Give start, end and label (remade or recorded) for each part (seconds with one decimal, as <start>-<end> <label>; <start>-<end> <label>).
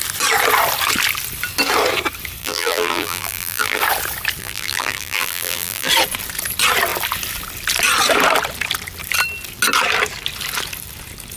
0.0-2.4 recorded; 2.4-3.8 remade; 3.8-4.4 recorded; 4.4-5.9 remade; 5.9-11.4 recorded